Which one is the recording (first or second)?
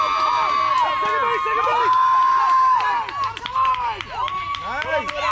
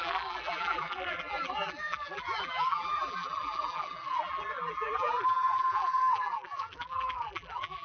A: first